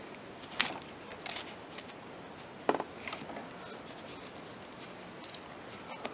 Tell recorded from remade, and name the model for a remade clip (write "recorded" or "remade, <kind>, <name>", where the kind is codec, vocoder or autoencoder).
recorded